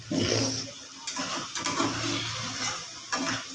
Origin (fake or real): real